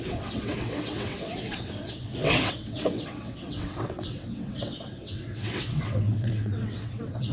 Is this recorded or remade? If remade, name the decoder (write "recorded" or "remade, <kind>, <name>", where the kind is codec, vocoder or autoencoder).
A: remade, vocoder, WaveNeXt